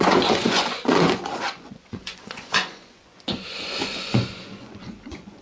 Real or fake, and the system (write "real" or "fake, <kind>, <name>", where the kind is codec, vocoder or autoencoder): fake, vocoder, Vocos